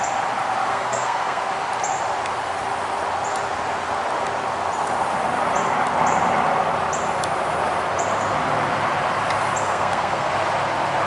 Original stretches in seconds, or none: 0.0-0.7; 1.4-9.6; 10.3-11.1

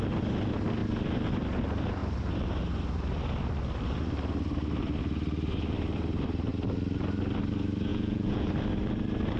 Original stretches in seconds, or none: 0.0-7.9; 8.5-9.4

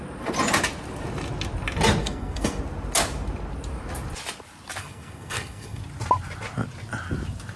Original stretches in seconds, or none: 0.0-2.0; 2.6-4.8; 5.8-7.6